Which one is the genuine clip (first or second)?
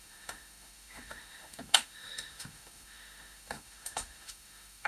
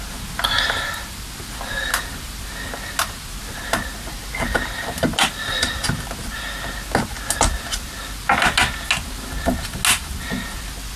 second